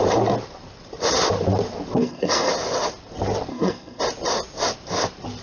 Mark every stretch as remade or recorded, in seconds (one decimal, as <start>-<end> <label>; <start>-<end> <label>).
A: 0.0-2.0 recorded; 2.0-2.5 remade; 2.5-3.5 recorded; 3.5-4.0 remade; 4.0-5.4 recorded